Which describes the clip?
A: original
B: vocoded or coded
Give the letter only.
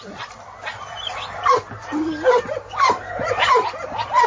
A